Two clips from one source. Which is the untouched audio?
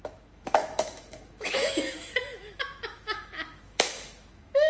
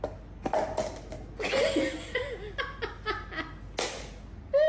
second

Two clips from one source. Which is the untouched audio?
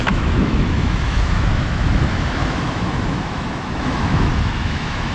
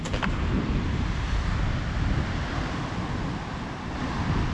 second